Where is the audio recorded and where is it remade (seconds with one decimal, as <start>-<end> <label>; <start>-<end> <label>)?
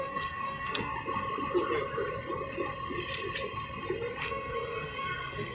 0.0-0.9 remade; 0.9-4.2 recorded; 4.2-5.5 remade